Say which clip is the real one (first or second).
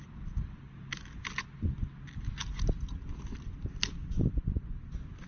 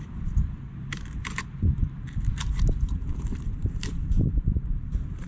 first